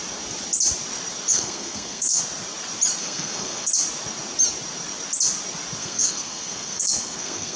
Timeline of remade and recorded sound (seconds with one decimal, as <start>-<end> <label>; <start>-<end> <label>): 0.0-1.3 recorded; 1.3-2.2 remade; 2.2-3.0 recorded; 3.0-3.7 remade; 3.7-5.8 recorded; 5.8-7.6 remade